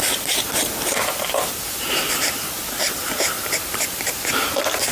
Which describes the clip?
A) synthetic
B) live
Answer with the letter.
A